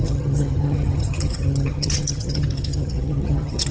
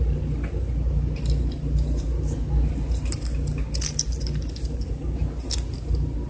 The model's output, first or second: first